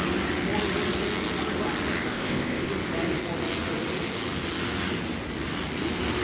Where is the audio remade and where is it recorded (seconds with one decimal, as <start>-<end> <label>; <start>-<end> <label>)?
0.0-2.1 recorded; 2.1-2.7 remade; 2.7-6.2 recorded